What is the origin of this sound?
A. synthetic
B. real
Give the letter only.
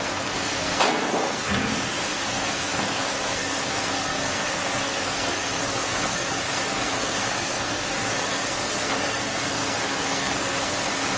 A